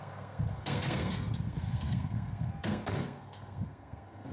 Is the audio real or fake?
fake